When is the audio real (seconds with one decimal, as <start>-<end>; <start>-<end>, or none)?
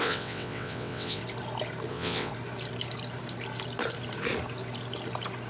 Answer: 1.2-1.9; 2.3-5.5